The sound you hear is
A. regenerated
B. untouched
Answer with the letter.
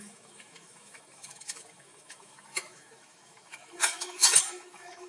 A